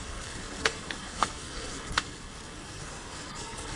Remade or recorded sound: remade